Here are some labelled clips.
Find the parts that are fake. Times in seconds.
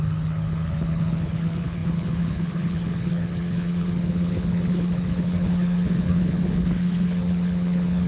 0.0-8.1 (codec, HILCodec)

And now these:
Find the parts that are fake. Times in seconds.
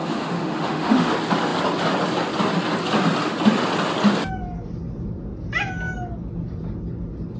0.0-1.1 (autoencoder, DAC-VAE)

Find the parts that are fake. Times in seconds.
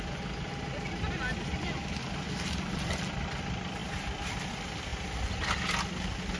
1.3-3.0 (vocoder, BigVGAN v2)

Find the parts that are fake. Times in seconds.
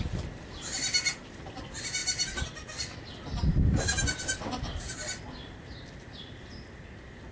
none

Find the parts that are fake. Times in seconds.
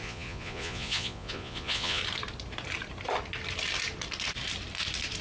0.0-2.0 (vocoder, Vocos)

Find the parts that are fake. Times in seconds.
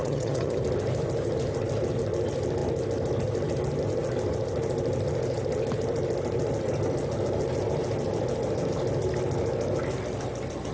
0.0-0.6 (vocoder, HiFi-GAN)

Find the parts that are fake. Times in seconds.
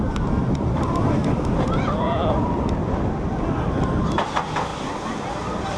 none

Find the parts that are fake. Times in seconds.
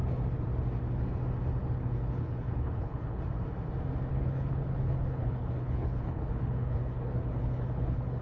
1.6-3.2 (codec, HILCodec); 4.1-8.2